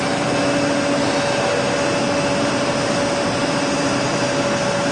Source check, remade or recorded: recorded